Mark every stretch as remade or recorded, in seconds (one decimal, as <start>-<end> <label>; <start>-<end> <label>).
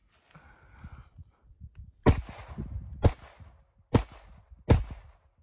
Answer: 0.0-5.4 recorded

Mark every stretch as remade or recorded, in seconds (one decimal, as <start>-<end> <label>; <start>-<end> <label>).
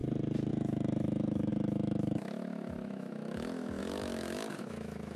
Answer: 0.0-0.5 recorded; 0.5-5.2 remade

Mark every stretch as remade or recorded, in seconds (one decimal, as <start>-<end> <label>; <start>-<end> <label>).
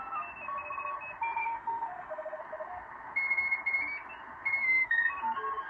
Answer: 0.0-1.4 recorded; 1.4-2.4 remade; 2.4-4.6 recorded; 4.6-5.1 remade; 5.1-5.7 recorded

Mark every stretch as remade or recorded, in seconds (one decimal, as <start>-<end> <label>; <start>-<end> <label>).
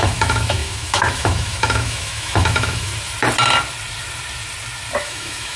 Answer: 0.0-2.9 remade; 2.9-5.0 recorded; 5.0-5.6 remade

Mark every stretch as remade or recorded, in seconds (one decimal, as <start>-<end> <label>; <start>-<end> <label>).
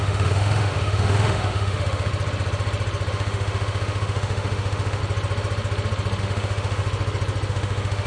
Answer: 0.0-2.1 remade; 2.1-3.1 recorded; 3.1-5.0 remade; 5.0-6.2 recorded; 6.2-6.8 remade; 6.8-7.5 recorded; 7.5-8.1 remade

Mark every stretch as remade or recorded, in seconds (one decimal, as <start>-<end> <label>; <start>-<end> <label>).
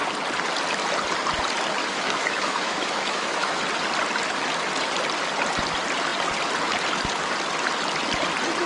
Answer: 0.0-1.8 recorded; 1.8-3.6 remade; 3.6-8.7 recorded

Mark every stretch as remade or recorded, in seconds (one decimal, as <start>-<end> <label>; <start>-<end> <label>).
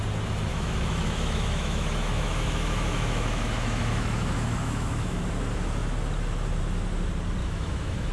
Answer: 0.0-0.5 recorded; 0.5-5.2 remade; 5.2-7.4 recorded; 7.4-8.1 remade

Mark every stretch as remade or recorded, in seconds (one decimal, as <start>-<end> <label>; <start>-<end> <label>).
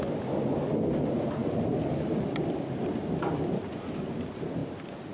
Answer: 0.0-5.1 recorded